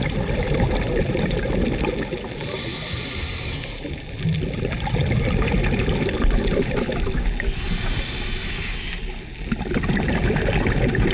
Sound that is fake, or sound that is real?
real